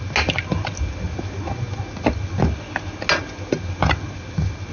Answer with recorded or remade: recorded